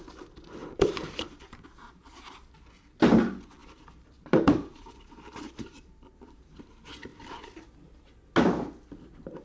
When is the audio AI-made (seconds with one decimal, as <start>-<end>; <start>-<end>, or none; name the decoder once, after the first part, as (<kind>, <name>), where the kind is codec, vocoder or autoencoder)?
0.6-2.5 (vocoder, BigVGAN v2); 3.6-6.6